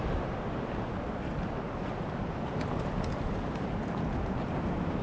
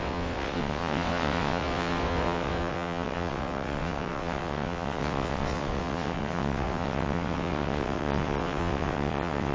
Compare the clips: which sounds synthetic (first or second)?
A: second